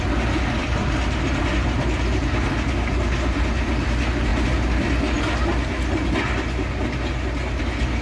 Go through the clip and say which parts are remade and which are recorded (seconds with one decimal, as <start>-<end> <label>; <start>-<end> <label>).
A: 0.0-8.0 recorded